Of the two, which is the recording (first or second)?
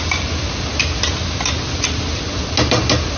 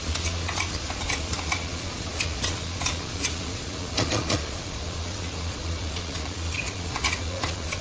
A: first